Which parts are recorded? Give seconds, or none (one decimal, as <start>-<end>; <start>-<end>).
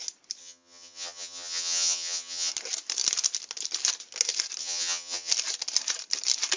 0.0-0.4; 2.5-4.6; 5.3-6.6